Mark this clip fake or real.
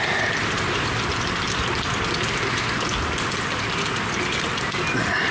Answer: real